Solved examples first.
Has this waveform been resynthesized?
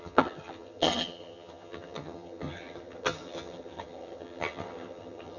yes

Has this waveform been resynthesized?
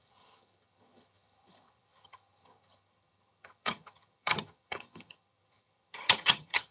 yes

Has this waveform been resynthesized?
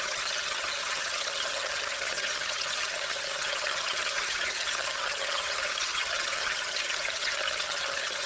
yes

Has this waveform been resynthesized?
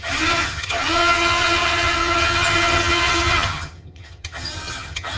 yes